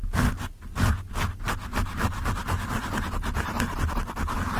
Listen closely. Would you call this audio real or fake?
real